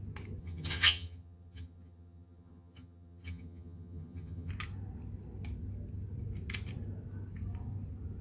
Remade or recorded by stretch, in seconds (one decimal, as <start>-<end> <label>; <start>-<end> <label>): 0.0-0.4 recorded; 0.4-4.5 remade; 4.5-8.2 recorded